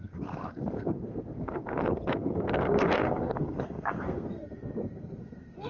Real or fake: fake